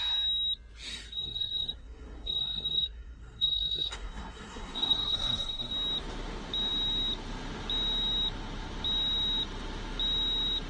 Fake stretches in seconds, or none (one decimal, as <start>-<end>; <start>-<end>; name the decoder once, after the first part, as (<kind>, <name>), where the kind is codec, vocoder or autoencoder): 0.9-5.7 (codec, SNAC)